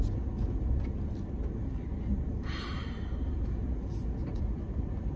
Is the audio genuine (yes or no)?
yes